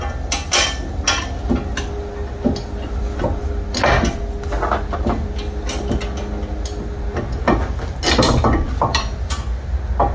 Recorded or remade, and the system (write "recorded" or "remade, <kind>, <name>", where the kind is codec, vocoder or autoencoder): recorded